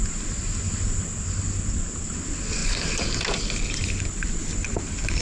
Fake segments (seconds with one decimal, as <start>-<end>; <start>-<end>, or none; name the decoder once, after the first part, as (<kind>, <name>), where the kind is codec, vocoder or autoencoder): none